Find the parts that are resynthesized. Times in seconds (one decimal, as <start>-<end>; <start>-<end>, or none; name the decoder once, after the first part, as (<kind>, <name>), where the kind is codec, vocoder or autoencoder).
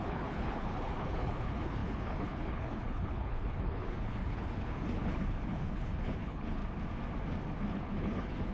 0.0-6.6 (codec, HILCodec); 7.7-8.5